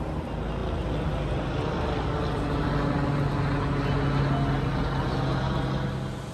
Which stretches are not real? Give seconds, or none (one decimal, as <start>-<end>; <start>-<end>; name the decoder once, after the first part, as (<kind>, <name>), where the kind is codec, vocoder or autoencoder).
none